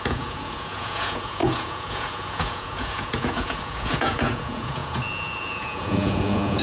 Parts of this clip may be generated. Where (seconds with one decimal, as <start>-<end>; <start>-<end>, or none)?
0.0-6.6